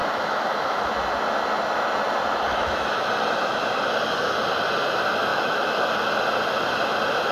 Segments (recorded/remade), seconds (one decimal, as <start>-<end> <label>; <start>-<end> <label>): 0.0-0.9 remade; 0.9-2.5 recorded; 2.5-3.1 remade; 3.1-5.3 recorded; 5.3-5.9 remade; 5.9-7.3 recorded